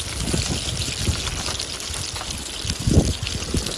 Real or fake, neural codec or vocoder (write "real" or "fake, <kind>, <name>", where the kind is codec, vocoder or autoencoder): real